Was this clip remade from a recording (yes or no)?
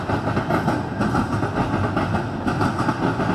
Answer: no